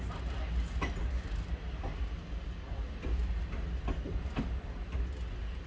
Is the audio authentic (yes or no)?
yes